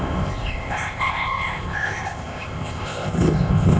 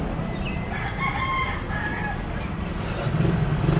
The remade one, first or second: first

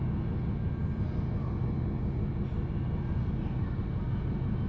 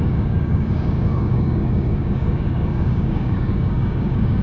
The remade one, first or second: second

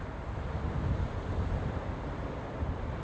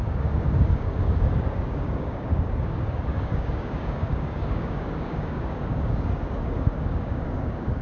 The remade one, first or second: second